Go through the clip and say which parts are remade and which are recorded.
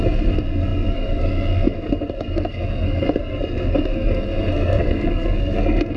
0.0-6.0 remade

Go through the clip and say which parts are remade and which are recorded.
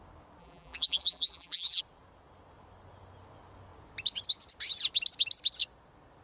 0.0-0.4 recorded; 0.4-1.8 remade; 1.8-6.2 recorded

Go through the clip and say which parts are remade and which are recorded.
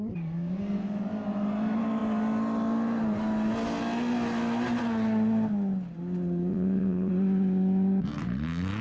0.0-6.5 recorded; 6.5-7.1 remade; 7.1-8.8 recorded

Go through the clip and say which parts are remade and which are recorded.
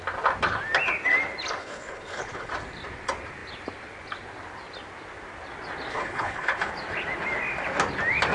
0.0-1.6 recorded; 1.6-2.5 remade; 2.5-5.9 recorded; 5.9-6.7 remade; 6.7-8.3 recorded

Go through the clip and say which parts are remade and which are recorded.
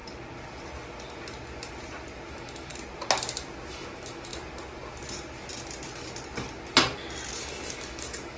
0.0-2.3 recorded; 2.3-2.7 remade; 2.7-3.7 recorded; 3.7-4.3 remade; 4.3-7.4 recorded; 7.4-8.4 remade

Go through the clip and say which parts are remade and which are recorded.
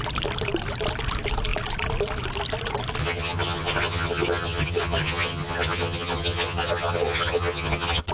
0.0-3.0 recorded; 3.0-8.1 remade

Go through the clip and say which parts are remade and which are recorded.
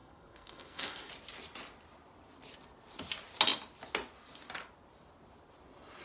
0.0-1.1 remade; 1.1-6.0 recorded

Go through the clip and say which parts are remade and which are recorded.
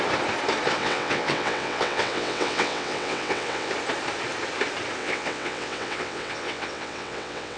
0.0-0.8 recorded; 0.8-3.7 remade; 3.7-5.0 recorded; 5.0-7.6 remade